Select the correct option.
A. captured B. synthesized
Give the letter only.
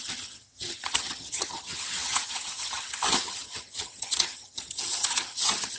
B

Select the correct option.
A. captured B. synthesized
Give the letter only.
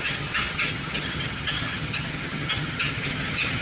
B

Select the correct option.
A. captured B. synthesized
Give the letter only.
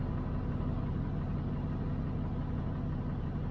A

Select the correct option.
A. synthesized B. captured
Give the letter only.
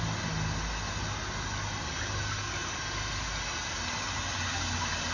B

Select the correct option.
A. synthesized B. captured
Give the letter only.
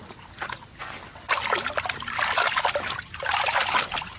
B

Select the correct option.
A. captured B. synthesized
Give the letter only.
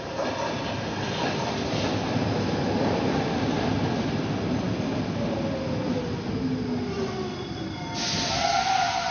A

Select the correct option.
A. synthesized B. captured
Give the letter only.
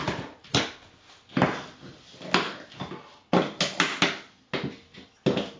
B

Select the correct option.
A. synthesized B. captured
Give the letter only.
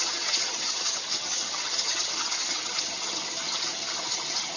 A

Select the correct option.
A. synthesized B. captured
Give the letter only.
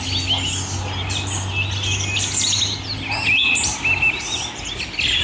B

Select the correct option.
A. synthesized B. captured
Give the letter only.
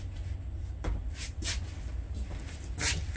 B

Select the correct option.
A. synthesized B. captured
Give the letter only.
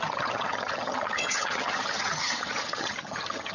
A